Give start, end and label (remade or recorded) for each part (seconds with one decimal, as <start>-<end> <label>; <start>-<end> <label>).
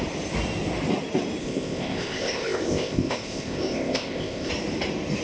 0.0-1.4 recorded; 1.4-4.5 remade; 4.5-5.2 recorded